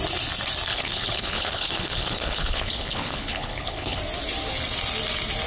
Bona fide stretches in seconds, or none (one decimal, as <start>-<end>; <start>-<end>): 0.0-0.7; 4.0-5.5